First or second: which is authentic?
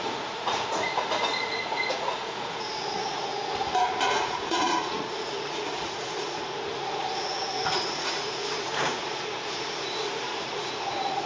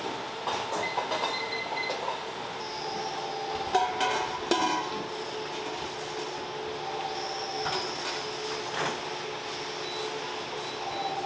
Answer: second